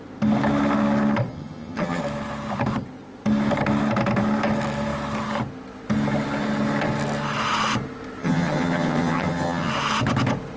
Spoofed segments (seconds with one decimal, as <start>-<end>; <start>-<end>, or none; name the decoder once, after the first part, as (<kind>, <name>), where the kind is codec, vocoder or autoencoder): 1.3-2.0 (vocoder, HiFi-GAN); 8.2-9.7